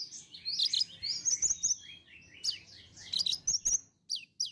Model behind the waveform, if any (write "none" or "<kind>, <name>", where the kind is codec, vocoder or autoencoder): none